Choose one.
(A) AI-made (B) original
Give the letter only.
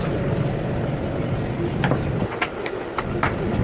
B